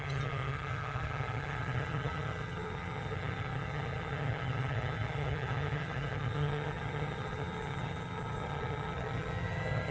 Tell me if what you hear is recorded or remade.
remade